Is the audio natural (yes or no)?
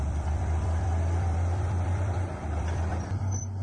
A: no